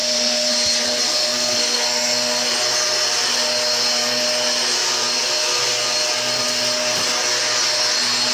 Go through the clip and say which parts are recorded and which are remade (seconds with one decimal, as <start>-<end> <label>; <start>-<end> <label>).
0.0-0.5 remade; 0.5-1.1 recorded; 1.1-2.5 remade; 2.5-8.3 recorded